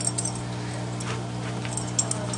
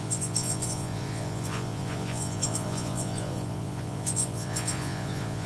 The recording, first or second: first